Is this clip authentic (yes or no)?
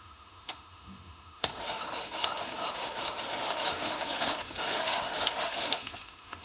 no